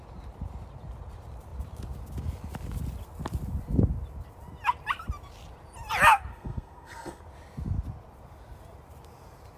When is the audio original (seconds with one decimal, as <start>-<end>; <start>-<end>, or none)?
0.0-6.3; 7.2-9.6